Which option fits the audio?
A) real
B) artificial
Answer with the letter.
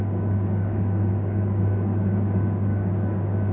B